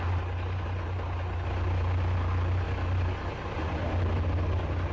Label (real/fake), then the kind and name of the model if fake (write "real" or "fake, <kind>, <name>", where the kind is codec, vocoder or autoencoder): real